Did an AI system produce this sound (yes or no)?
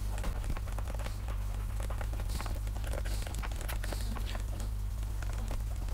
no